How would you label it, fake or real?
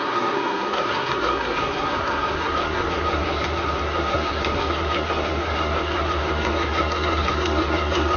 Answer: fake